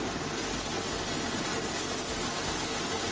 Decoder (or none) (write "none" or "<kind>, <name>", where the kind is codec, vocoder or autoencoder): none